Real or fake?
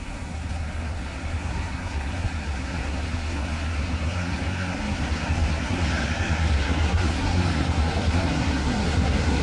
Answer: fake